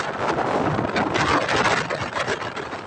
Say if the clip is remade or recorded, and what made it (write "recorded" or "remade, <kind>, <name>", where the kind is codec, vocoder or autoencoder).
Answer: recorded